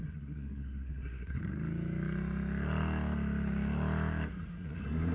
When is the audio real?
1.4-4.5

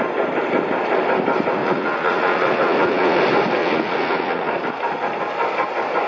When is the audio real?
0.0-1.6; 3.2-3.6; 4.5-6.1

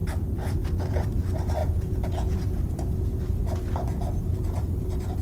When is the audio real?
0.0-1.6; 3.2-5.2

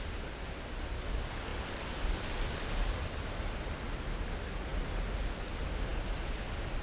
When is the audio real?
0.0-6.8

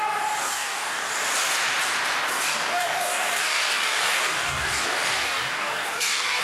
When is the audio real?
0.0-0.4; 1.1-2.3